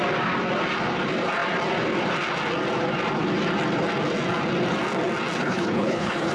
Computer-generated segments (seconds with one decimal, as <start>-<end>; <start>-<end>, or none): 5.4-6.3